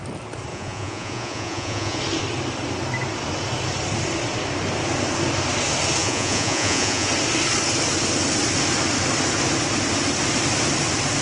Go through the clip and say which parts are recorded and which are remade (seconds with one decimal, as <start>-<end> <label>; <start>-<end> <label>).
0.0-0.5 recorded; 0.5-2.0 remade; 2.0-6.0 recorded; 6.0-7.1 remade; 7.1-11.2 recorded